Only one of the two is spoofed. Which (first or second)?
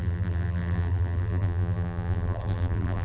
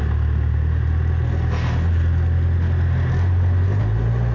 first